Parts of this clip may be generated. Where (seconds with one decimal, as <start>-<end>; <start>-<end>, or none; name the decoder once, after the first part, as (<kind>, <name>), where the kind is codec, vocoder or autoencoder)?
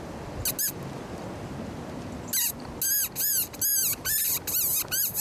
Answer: none